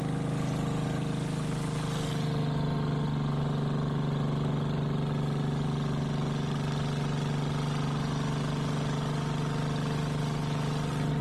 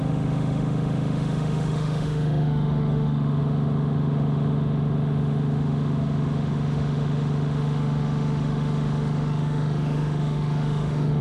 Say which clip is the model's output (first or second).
second